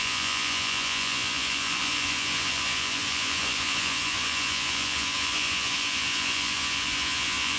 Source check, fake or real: fake